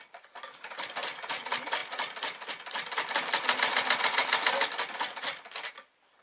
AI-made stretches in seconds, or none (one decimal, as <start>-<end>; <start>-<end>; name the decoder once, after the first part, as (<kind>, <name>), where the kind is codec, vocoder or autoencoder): none